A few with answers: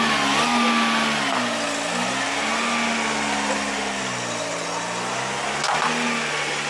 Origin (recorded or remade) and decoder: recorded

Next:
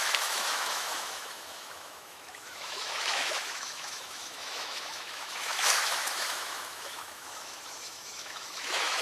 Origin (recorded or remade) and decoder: remade, autoencoder, DAC-VAE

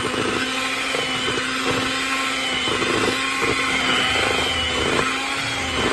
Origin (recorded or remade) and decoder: recorded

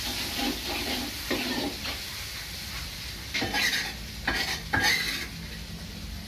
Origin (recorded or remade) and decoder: recorded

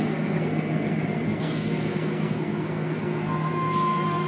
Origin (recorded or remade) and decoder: remade, codec, SNAC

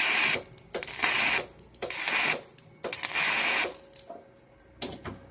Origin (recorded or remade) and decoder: recorded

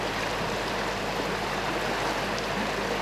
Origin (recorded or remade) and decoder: recorded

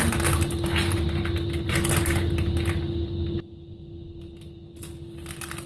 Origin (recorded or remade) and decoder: recorded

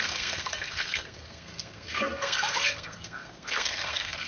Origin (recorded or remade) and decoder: remade, codec, SNAC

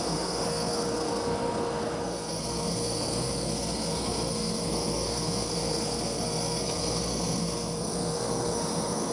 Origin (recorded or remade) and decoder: remade, codec, SNAC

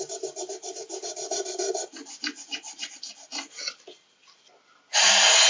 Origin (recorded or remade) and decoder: recorded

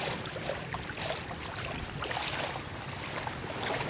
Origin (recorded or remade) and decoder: recorded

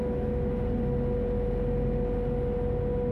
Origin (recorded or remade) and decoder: recorded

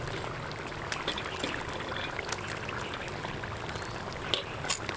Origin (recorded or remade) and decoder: recorded